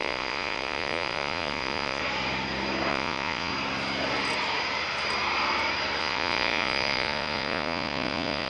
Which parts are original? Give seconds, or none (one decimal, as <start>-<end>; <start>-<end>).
2.0-2.9; 3.5-6.0